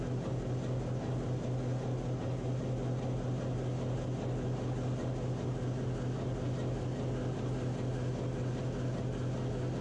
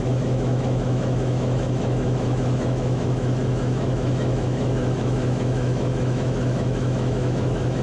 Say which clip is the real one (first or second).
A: first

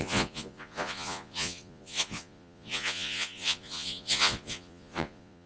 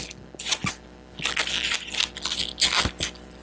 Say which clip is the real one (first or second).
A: second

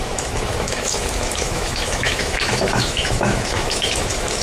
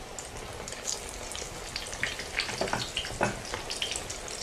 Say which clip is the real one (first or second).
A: second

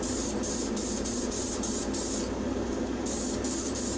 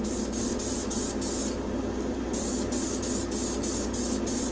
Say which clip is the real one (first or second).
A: second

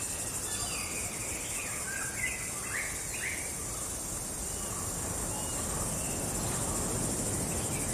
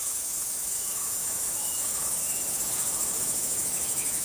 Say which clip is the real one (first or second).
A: first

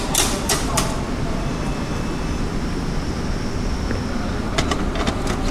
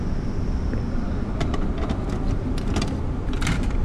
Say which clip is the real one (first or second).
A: first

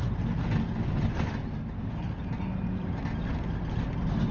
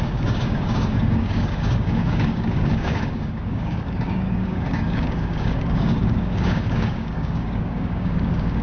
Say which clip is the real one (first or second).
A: first